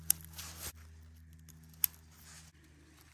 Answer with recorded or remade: recorded